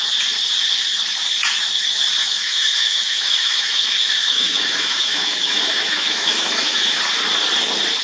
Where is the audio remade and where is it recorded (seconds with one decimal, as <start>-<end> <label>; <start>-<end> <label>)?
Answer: 0.0-2.2 recorded; 2.2-7.0 remade; 7.0-8.0 recorded